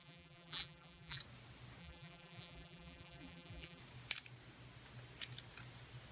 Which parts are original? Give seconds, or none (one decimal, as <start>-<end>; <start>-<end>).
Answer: 1.2-1.8; 3.8-6.1